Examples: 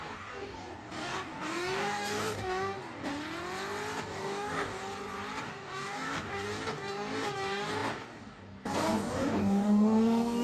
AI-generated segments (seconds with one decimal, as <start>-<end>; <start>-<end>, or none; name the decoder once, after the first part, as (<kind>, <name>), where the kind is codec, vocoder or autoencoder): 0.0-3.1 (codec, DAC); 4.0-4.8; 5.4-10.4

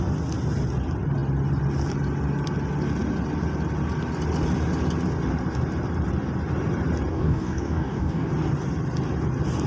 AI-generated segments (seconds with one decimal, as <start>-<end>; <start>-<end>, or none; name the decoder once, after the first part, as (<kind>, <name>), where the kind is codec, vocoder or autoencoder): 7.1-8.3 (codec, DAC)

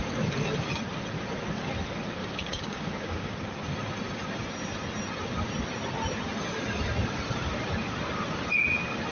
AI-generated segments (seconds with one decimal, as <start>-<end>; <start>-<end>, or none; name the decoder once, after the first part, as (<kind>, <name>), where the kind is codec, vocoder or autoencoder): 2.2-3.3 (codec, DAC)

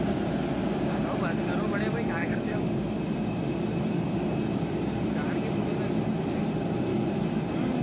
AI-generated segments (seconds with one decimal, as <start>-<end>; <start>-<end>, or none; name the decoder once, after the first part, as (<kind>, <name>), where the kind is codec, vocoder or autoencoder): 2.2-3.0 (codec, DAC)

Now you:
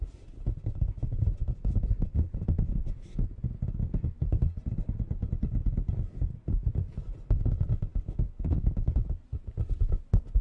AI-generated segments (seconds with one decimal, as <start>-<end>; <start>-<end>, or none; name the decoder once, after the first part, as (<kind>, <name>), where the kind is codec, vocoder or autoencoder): 7.9-8.7 (codec, DAC)

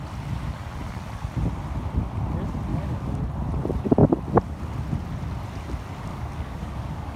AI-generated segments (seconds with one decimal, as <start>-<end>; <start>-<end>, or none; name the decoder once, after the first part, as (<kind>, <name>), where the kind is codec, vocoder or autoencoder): 2.7-3.2 (codec, DAC); 6.1-7.2

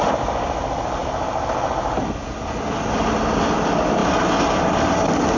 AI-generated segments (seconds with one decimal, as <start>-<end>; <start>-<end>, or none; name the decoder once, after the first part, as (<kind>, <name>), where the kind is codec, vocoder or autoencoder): none

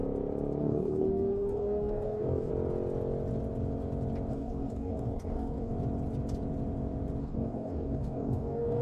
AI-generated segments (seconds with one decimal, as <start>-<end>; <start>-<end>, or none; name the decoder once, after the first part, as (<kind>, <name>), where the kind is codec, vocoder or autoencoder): 0.6-2.5 (codec, DAC); 4.3-5.7; 7.2-8.8